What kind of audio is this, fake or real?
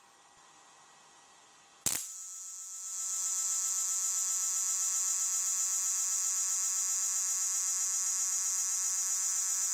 real